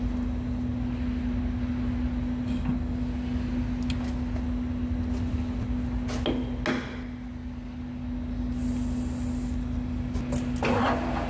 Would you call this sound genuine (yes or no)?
yes